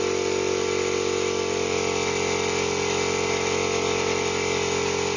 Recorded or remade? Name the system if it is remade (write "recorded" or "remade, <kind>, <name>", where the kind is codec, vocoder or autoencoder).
recorded